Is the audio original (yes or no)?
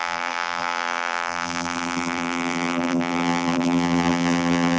no